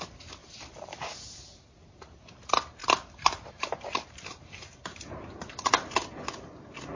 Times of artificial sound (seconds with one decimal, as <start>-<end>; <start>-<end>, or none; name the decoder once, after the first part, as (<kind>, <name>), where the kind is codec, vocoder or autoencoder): 0.4-2.2 (vocoder, BigVGAN v2); 2.8-5.1